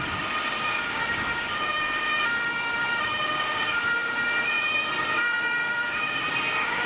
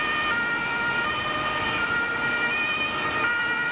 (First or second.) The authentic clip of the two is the second